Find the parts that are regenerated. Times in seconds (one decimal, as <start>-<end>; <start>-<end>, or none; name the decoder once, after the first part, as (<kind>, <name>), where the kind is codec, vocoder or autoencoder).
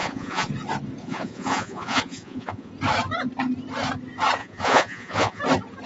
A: 0.0-0.5 (vocoder, Vocos); 1.0-2.7; 4.4-5.4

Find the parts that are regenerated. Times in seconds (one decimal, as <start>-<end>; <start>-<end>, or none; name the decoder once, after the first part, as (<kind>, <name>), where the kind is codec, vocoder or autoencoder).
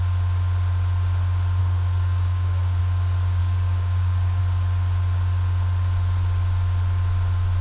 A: 1.6-2.8 (codec, DAC); 3.4-4.4